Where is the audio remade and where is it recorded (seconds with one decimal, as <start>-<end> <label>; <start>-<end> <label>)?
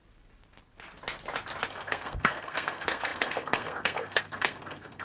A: 0.0-1.7 recorded; 1.7-5.0 remade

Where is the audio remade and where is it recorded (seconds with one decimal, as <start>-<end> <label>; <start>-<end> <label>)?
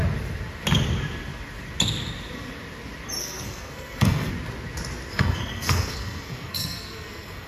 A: 0.0-3.2 recorded; 3.2-4.3 remade; 4.3-5.1 recorded; 5.1-7.5 remade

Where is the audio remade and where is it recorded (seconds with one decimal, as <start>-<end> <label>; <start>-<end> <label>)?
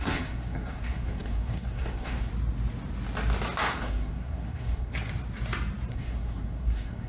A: 0.0-2.3 remade; 2.3-3.6 recorded; 3.6-4.9 remade; 4.9-5.9 recorded; 5.9-7.1 remade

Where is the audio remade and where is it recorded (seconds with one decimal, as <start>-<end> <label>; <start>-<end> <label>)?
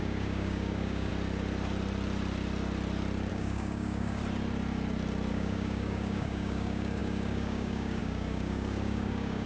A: 0.0-1.1 remade; 1.1-3.3 recorded; 3.3-4.2 remade; 4.2-5.3 recorded; 5.3-9.5 remade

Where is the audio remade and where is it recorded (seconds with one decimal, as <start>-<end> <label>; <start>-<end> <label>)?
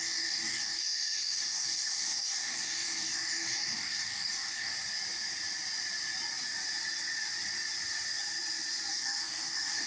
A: 0.0-4.7 remade; 4.7-8.9 recorded; 8.9-9.9 remade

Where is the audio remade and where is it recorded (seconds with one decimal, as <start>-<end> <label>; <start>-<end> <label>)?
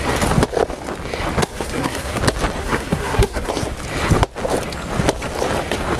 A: 0.0-1.4 recorded; 1.4-2.2 remade; 2.2-2.6 recorded; 2.6-3.5 remade; 3.5-6.0 recorded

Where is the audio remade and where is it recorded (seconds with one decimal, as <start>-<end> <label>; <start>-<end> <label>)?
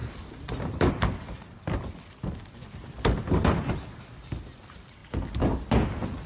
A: 0.0-0.9 remade; 0.9-6.3 recorded